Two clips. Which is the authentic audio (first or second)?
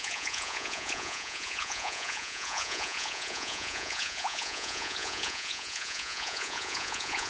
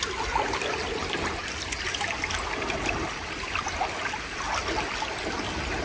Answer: second